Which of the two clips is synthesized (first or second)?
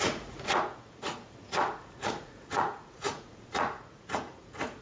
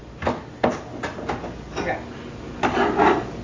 first